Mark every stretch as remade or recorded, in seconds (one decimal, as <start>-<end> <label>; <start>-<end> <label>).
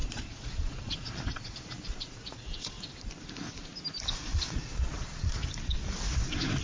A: 0.0-3.1 remade; 3.1-4.3 recorded; 4.3-5.4 remade; 5.4-6.6 recorded